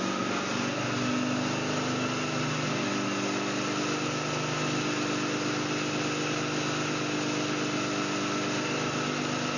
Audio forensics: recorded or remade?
recorded